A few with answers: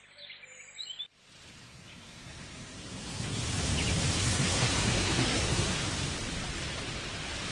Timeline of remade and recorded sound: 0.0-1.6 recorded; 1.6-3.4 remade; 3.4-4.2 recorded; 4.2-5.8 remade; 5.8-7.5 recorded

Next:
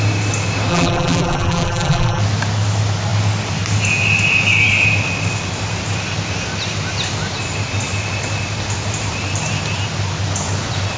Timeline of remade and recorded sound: 0.0-0.7 recorded; 0.7-2.2 remade; 2.2-11.0 recorded

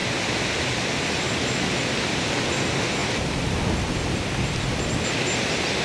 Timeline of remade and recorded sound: 0.0-3.0 recorded; 3.0-3.6 remade; 3.6-5.8 recorded

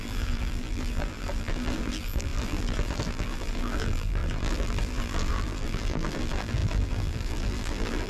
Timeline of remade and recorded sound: 0.0-8.1 remade

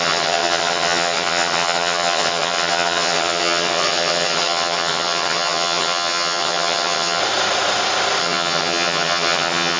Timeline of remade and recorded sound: 0.0-7.2 remade; 7.2-8.2 recorded; 8.2-9.8 remade